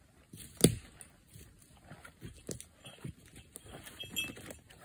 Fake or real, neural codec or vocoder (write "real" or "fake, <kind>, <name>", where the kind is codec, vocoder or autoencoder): real